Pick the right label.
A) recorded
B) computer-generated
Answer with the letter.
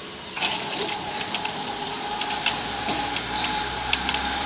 B